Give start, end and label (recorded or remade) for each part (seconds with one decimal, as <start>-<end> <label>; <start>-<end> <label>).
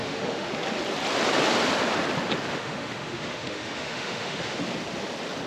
0.0-0.5 remade; 0.5-2.5 recorded; 2.5-4.6 remade; 4.6-5.5 recorded